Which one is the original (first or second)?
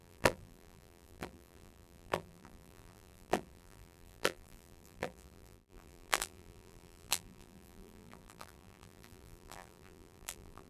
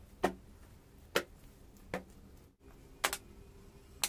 second